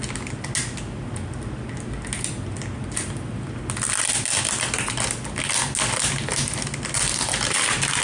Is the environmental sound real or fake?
real